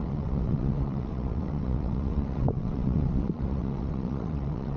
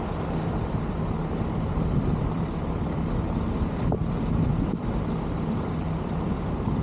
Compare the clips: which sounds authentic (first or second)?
second